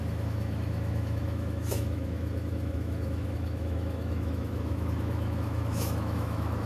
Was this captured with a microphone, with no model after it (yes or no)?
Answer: no